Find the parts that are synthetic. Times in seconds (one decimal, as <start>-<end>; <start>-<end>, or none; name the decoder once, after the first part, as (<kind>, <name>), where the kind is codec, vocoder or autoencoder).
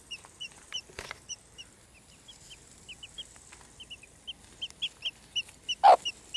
0.0-1.6 (vocoder, BigVGAN v2)